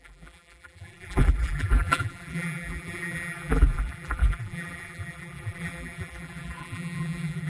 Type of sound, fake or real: fake